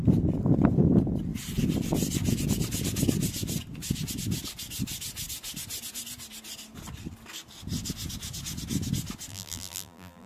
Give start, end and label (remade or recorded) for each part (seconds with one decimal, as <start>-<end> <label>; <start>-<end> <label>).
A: 0.0-9.3 recorded; 9.3-10.3 remade